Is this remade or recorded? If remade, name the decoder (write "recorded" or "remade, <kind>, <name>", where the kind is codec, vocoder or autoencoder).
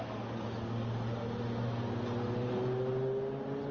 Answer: recorded